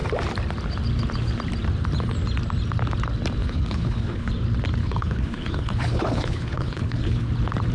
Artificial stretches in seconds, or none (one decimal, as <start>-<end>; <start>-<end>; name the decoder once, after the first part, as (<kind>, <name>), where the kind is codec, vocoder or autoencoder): 3.4-4.3 (codec, HILCodec); 4.8-7.3